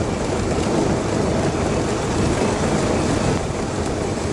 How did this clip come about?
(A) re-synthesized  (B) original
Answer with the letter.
B